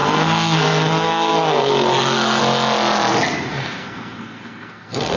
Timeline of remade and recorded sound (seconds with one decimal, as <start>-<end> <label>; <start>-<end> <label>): 0.0-2.4 remade; 2.4-3.5 recorded; 3.5-5.2 remade

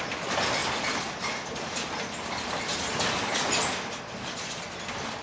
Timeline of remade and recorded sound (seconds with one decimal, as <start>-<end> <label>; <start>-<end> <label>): 0.0-5.2 recorded

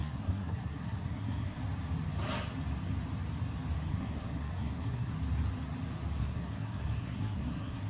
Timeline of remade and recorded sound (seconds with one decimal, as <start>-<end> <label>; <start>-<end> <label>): 0.0-1.6 remade; 1.6-3.9 recorded; 3.9-5.1 remade; 5.1-6.2 recorded; 6.2-7.9 remade